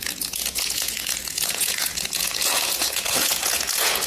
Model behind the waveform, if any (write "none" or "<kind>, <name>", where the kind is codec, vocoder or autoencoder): vocoder, Vocos